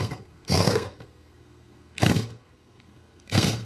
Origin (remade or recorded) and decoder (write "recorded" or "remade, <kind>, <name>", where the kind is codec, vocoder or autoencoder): remade, codec, SNAC